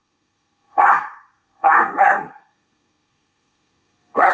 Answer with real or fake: fake